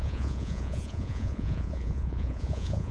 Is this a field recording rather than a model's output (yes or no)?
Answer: no